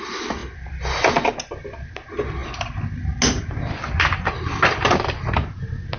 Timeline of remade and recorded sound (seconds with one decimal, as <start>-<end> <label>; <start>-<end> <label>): 0.0-6.0 recorded